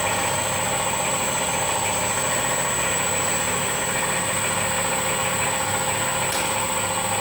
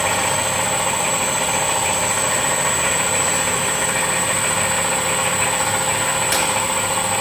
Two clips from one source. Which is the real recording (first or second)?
first